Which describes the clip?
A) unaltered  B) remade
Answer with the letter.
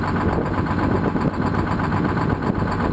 A